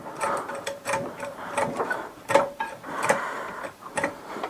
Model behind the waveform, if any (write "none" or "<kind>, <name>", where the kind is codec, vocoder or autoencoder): vocoder, BigVGAN v2